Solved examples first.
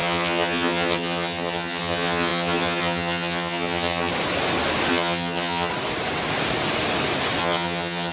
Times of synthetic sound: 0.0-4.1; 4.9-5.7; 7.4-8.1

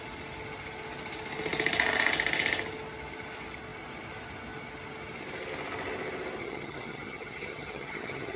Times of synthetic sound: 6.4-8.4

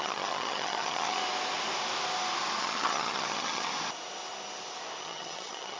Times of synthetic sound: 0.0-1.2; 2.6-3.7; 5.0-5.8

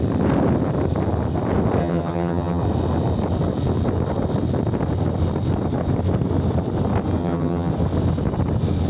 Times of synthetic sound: 1.8-2.6; 7.2-7.7

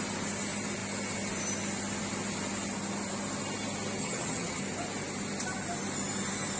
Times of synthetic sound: 4.0-4.6

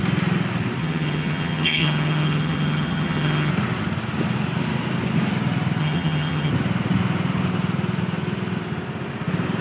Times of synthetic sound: 0.8-3.5; 5.8-6.5

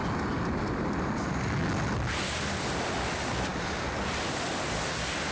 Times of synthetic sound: none